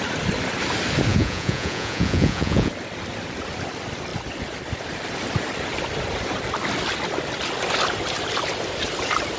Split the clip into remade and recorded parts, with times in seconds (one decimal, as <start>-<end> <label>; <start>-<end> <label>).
0.0-1.1 recorded; 1.1-2.7 remade; 2.7-9.4 recorded

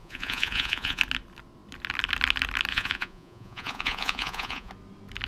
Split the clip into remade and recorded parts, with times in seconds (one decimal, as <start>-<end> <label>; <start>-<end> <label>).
0.0-1.0 remade; 1.0-2.7 recorded; 2.7-4.7 remade; 4.7-5.3 recorded

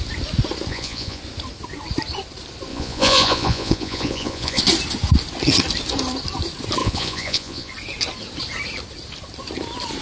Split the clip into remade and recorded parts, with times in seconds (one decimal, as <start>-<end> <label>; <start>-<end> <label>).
0.0-0.7 recorded; 0.7-1.2 remade; 1.2-2.7 recorded; 2.7-4.6 remade; 4.6-6.8 recorded; 6.8-7.7 remade; 7.7-10.0 recorded

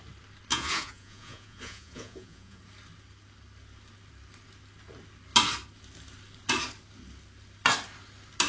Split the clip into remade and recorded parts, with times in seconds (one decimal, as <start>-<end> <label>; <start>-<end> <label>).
0.0-0.5 recorded; 0.5-2.6 remade; 2.6-8.5 recorded

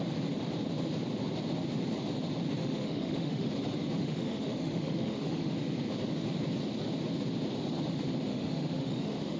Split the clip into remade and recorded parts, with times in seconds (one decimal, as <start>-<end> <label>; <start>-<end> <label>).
0.0-2.6 recorded; 2.6-3.5 remade; 3.5-4.0 recorded; 4.0-5.5 remade; 5.5-8.3 recorded; 8.3-9.4 remade

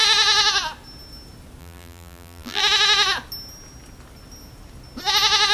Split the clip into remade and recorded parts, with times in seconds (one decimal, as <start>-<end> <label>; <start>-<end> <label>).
0.0-1.6 recorded; 1.6-2.6 remade; 2.6-5.5 recorded

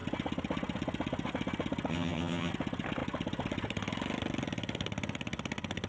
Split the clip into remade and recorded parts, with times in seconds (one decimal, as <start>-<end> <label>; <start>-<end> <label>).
0.0-1.9 recorded; 1.9-2.5 remade; 2.5-5.9 recorded

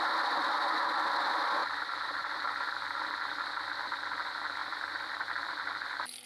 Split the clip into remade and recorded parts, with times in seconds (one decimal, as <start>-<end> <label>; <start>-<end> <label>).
0.0-1.6 recorded; 1.6-2.4 remade; 2.4-6.3 recorded